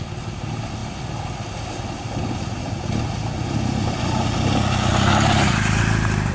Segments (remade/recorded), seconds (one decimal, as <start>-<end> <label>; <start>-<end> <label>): 0.0-4.9 recorded; 4.9-5.8 remade; 5.8-6.3 recorded